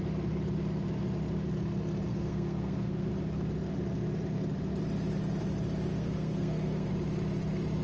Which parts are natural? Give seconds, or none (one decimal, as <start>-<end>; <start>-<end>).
0.0-2.1; 3.1-5.9; 6.9-7.8